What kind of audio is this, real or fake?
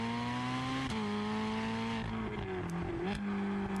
real